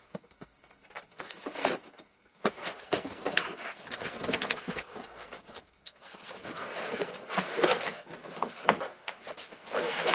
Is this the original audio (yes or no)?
no